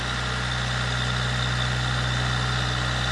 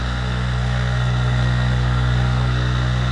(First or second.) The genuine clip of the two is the first